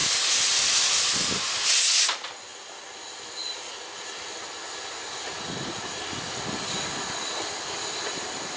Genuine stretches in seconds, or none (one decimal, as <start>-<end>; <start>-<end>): 0.0-8.6